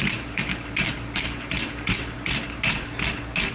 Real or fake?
real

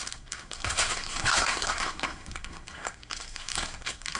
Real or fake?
fake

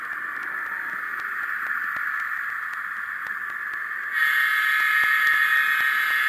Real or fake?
real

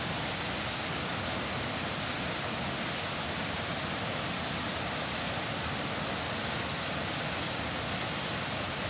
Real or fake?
real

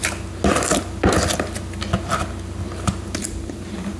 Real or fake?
real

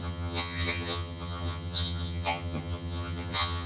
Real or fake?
fake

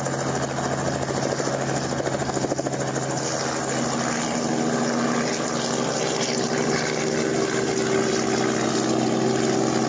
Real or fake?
real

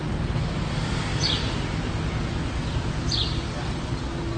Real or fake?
real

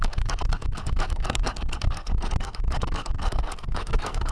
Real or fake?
fake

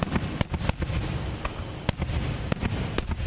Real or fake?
real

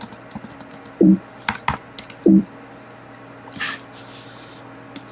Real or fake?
fake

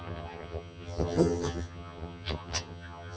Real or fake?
fake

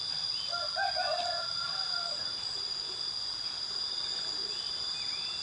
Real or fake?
real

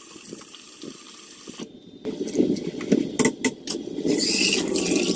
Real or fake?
real